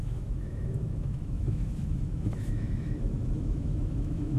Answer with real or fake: fake